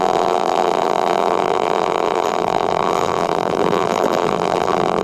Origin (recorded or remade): remade